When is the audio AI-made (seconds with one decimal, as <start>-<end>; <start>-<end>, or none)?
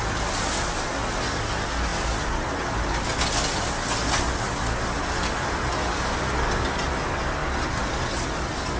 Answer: none